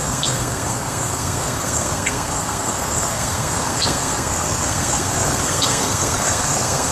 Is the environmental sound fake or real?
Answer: fake